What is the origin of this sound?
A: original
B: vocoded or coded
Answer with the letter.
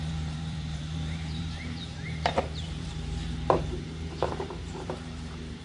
B